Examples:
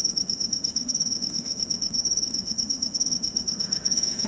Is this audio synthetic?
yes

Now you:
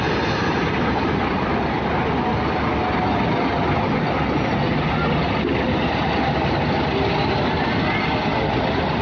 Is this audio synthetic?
no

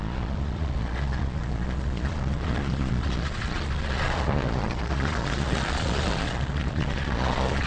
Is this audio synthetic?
yes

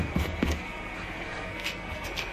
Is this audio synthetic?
yes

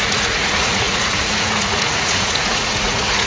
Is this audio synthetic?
yes